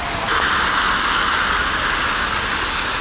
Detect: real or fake real